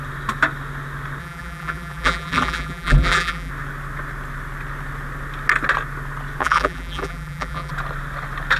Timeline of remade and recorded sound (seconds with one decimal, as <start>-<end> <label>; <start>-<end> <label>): 0.0-1.2 recorded; 1.2-3.5 remade; 3.5-6.4 recorded; 6.4-7.7 remade; 7.7-8.6 recorded